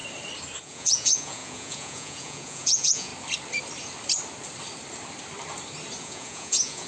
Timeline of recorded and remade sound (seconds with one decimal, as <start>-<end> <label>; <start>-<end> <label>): 0.0-0.6 recorded; 0.6-3.1 remade; 3.1-6.0 recorded; 6.0-6.9 remade